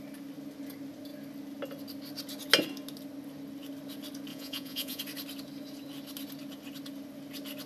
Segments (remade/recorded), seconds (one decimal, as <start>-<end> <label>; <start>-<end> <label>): 0.0-4.3 recorded; 4.3-5.0 remade; 5.0-7.7 recorded